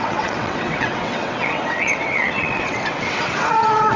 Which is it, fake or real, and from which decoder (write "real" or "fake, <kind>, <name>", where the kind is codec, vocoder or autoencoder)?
fake, vocoder, WaveNeXt